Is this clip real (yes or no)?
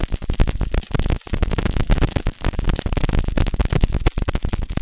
yes